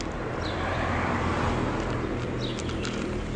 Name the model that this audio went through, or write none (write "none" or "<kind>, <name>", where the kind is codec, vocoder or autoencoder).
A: none